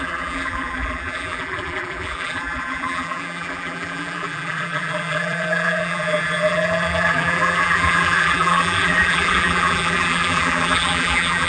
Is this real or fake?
fake